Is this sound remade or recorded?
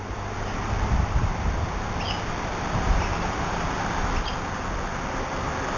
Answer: recorded